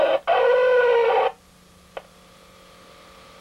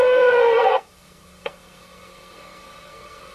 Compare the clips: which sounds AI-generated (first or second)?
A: second